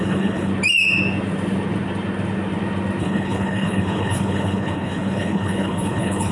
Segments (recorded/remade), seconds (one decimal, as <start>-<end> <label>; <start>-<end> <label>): 0.0-0.5 remade; 0.5-3.0 recorded; 3.0-6.3 remade